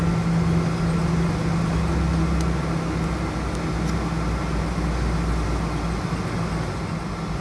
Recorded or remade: recorded